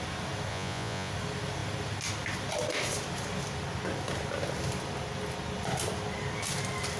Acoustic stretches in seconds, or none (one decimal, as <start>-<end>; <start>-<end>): 0.0-0.5; 1.1-7.0